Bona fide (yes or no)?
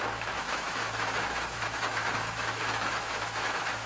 no